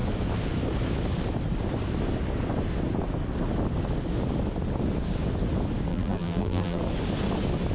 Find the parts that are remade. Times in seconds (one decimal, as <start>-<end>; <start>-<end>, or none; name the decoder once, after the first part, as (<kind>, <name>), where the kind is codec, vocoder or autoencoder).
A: 5.9-6.8 (vocoder, BigVGAN v2)